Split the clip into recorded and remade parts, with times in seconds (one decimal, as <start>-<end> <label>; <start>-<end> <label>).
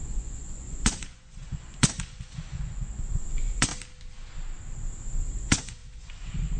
0.0-3.7 remade; 3.7-5.3 recorded; 5.3-6.6 remade